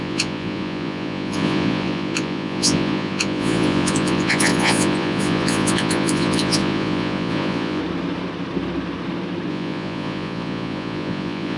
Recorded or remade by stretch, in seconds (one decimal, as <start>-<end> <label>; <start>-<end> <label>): 0.0-7.8 remade; 7.8-9.5 recorded; 9.5-11.6 remade